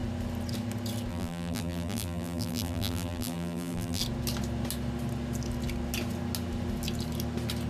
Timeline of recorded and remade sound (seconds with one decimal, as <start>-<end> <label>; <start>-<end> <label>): 0.0-1.1 recorded; 1.1-4.0 remade; 4.0-7.7 recorded